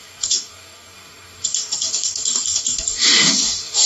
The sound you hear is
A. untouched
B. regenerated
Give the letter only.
B